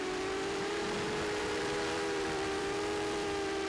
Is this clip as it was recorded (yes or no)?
no